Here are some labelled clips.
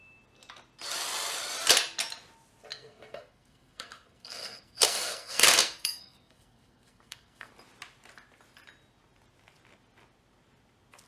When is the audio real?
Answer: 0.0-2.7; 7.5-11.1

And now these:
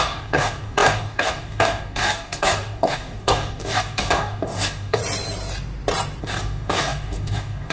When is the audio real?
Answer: 5.0-6.2